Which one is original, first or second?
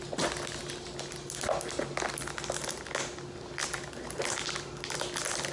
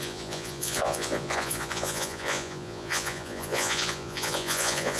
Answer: first